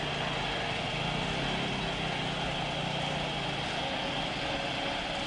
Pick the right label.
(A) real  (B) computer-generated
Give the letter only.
A